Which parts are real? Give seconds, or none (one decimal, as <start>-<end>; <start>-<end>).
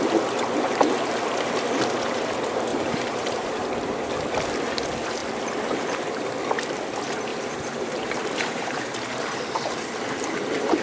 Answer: 0.0-2.7; 3.6-7.3; 9.4-10.8